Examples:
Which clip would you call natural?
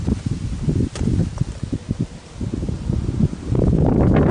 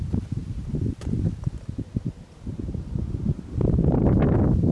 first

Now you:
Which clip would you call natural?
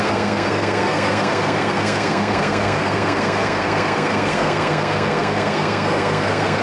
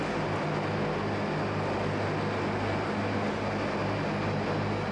second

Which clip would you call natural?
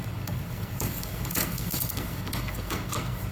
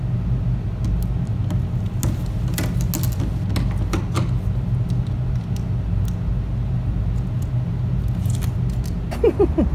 second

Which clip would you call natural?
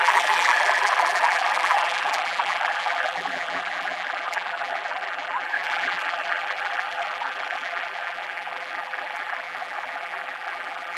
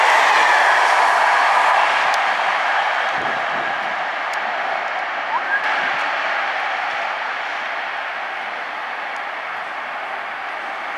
second